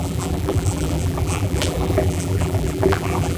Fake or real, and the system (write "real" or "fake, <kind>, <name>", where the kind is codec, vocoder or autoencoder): fake, vocoder, BigVGAN v2